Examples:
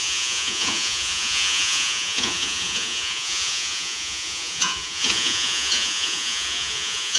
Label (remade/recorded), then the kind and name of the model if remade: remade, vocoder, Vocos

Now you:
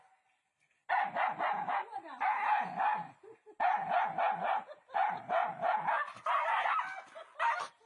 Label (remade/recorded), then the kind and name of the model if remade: recorded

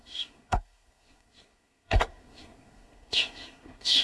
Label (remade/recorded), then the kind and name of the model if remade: remade, codec, SNAC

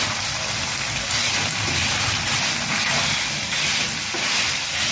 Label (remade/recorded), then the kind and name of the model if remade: recorded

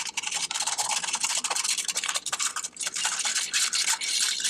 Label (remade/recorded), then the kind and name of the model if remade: recorded